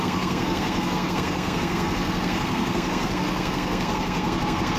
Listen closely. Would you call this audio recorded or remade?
remade